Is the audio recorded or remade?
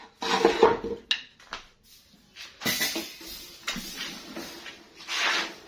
recorded